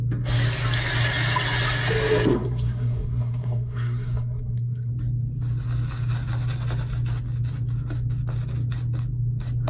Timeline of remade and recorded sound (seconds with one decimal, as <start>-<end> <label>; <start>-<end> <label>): 0.0-2.3 recorded; 2.3-4.9 remade; 4.9-9.7 recorded